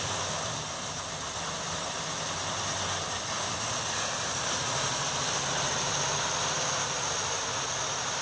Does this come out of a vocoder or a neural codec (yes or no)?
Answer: no